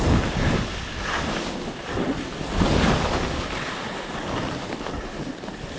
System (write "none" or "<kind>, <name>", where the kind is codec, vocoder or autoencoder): none